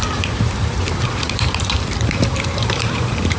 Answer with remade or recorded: remade